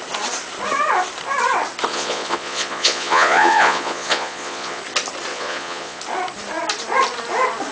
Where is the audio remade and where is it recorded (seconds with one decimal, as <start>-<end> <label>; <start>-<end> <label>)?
0.0-1.9 recorded; 1.9-4.8 remade; 4.8-5.3 recorded; 5.3-6.0 remade; 6.0-7.7 recorded